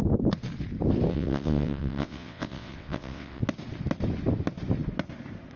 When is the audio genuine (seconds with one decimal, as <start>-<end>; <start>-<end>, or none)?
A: 0.0-1.1; 3.4-5.6